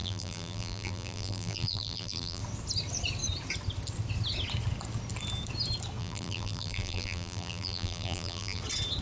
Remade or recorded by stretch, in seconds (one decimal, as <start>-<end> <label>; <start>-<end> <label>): 0.0-2.4 remade; 2.4-6.0 recorded; 6.0-8.6 remade; 8.6-9.0 recorded